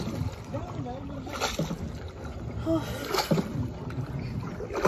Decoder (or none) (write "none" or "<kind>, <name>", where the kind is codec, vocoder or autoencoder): none